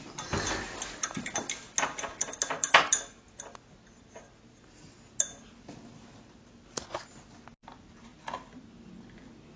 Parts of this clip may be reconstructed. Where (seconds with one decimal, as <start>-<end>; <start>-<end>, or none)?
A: none